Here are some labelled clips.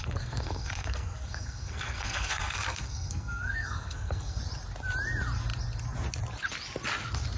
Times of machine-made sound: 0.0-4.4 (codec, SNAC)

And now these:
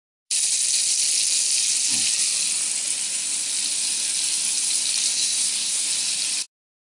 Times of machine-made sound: 5.1-5.9 (codec, SNAC)

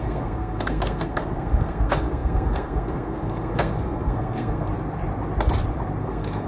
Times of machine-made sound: 0.0-4.7 (codec, SNAC); 6.0-6.5

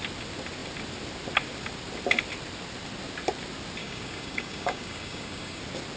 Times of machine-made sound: 3.8-5.6 (codec, DAC)

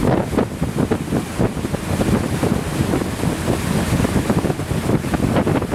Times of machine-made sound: 0.0-2.7 (vocoder, BigVGAN v2); 4.0-5.7

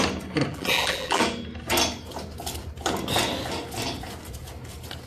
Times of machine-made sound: 0.5-1.2 (vocoder, BigVGAN v2)